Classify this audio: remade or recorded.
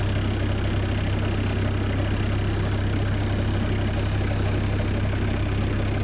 recorded